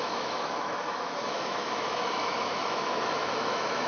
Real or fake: fake